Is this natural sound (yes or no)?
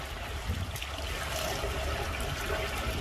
yes